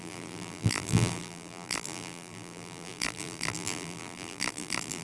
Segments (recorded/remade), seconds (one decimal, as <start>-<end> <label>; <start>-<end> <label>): 0.0-5.0 remade